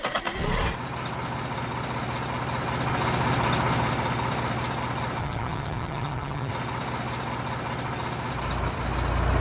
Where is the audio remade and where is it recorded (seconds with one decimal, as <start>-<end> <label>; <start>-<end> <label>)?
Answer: 0.0-5.2 recorded; 5.2-6.5 remade; 6.5-9.4 recorded